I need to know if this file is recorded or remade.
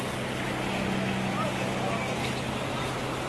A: recorded